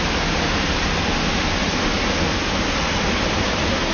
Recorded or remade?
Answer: recorded